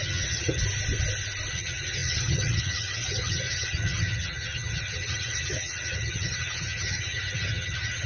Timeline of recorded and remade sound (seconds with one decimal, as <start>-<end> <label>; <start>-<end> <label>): 0.0-0.6 remade; 0.6-1.5 recorded; 1.5-8.1 remade